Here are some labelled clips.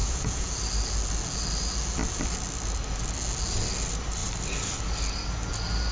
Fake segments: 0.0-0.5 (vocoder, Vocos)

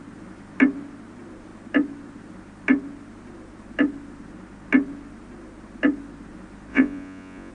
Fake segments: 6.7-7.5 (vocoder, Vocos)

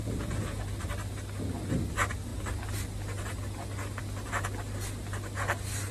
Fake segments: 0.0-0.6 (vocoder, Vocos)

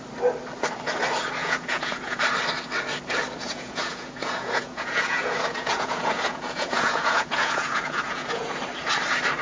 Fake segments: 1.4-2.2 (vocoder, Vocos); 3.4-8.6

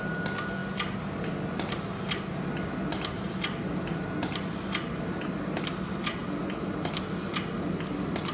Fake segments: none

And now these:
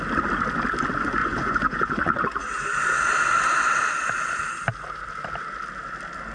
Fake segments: 1.2-2.4 (vocoder, Vocos)

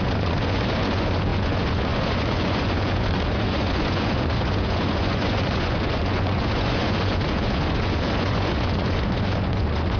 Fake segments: 0.0-10.0 (vocoder, Vocos)

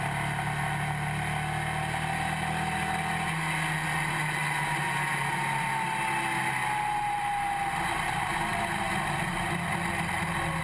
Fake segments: none